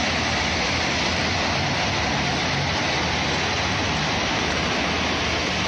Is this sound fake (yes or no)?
no